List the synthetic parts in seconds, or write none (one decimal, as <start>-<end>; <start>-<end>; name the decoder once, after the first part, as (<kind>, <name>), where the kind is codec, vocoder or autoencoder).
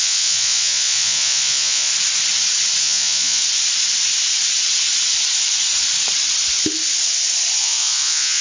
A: 0.0-1.9 (vocoder, Vocos); 2.8-3.4; 7.6-8.4